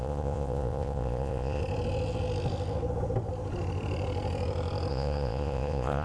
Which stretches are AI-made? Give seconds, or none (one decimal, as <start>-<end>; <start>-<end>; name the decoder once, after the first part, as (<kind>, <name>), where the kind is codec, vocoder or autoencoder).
0.0-1.6 (vocoder, Vocos); 4.9-6.0